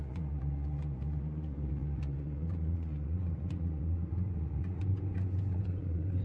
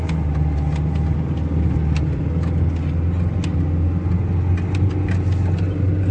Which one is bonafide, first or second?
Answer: second